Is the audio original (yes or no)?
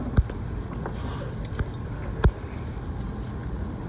yes